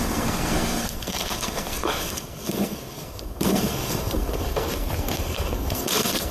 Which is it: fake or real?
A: fake